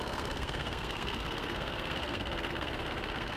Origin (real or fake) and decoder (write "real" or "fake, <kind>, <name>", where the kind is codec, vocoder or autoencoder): fake, codec, SNAC